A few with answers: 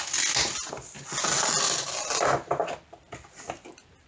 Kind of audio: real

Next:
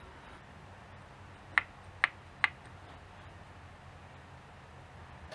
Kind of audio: real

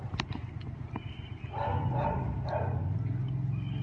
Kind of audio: real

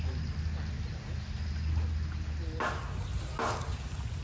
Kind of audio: real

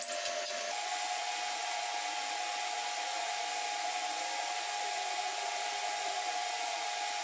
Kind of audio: real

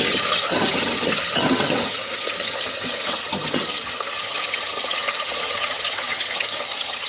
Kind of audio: fake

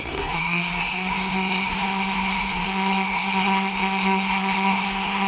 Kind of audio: fake